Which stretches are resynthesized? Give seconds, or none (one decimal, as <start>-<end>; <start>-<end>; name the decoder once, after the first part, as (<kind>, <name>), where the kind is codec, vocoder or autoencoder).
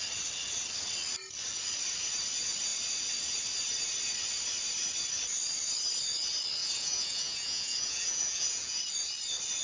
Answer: 6.6-8.8 (vocoder, Vocos)